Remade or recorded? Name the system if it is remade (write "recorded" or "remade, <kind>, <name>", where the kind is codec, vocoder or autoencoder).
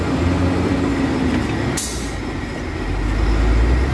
recorded